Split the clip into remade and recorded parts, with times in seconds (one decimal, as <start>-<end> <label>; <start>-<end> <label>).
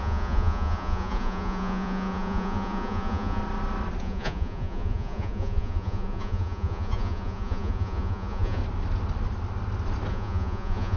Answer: 0.0-3.4 remade; 3.4-4.0 recorded; 4.0-8.6 remade; 8.6-10.1 recorded; 10.1-11.0 remade